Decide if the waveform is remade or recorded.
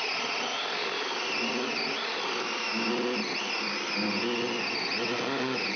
recorded